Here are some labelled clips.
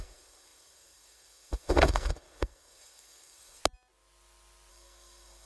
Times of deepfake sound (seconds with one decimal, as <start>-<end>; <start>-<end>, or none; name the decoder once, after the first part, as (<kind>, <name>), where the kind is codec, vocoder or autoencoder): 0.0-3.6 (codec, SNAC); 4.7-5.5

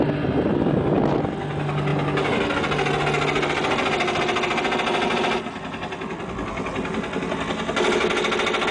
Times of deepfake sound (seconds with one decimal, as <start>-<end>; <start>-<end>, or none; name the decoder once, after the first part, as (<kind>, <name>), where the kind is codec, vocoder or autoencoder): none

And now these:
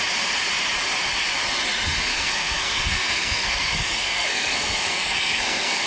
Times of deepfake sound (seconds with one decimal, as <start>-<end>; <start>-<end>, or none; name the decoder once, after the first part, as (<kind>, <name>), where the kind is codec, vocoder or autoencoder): 2.1-5.9 (codec, SNAC)